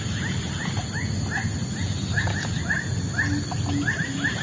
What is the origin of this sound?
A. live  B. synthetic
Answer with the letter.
A